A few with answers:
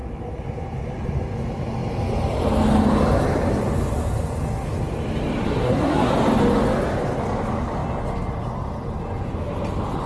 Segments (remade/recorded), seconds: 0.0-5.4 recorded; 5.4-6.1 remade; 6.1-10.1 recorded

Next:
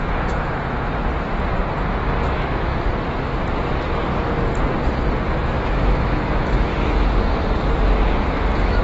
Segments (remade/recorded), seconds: 0.0-1.1 remade; 1.1-2.2 recorded; 2.2-2.7 remade; 2.7-5.3 recorded; 5.3-6.7 remade; 6.7-8.3 recorded; 8.3-8.8 remade

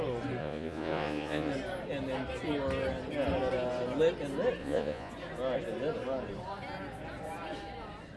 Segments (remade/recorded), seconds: 0.0-0.4 recorded; 0.4-1.5 remade; 1.5-4.6 recorded; 4.6-5.1 remade; 5.1-8.2 recorded

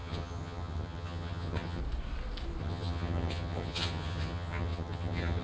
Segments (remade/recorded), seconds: 0.0-1.8 remade; 1.8-2.6 recorded; 2.6-5.4 remade

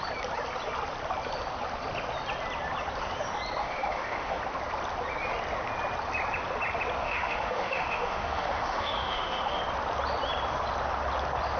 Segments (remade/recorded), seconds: 0.0-3.6 recorded; 3.6-4.4 remade; 4.4-7.0 recorded; 7.0-9.6 remade; 9.6-11.6 recorded

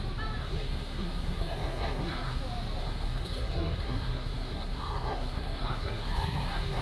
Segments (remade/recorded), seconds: 0.0-0.4 recorded; 0.4-2.4 remade; 2.4-2.8 recorded; 2.8-6.8 remade

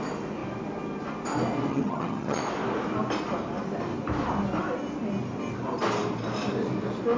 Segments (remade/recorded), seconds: 0.0-1.7 recorded; 1.7-2.4 remade; 2.4-7.2 recorded